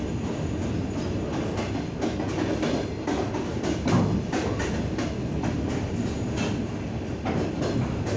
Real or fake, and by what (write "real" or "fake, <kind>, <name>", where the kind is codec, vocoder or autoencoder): real